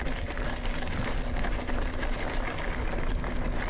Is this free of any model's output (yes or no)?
yes